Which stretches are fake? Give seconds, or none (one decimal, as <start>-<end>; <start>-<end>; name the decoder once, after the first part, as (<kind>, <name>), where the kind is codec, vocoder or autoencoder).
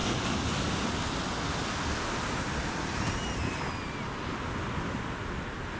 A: none